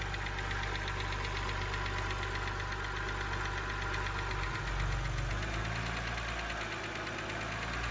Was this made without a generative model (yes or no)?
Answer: yes